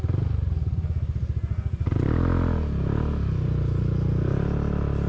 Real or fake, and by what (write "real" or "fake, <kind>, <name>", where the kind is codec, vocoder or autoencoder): real